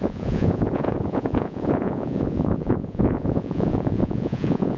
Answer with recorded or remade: remade